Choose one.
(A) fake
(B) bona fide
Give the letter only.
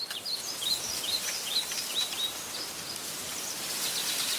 A